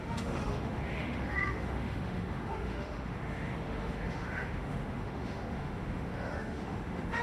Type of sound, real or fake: fake